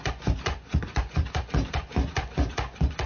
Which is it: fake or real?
fake